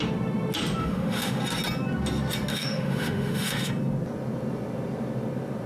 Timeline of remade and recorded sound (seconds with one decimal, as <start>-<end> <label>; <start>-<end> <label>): 0.0-0.8 recorded; 0.8-1.4 remade; 1.4-2.5 recorded; 2.5-3.7 remade; 3.7-5.7 recorded